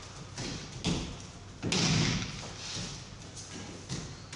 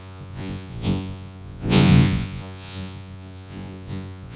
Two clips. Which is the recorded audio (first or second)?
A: first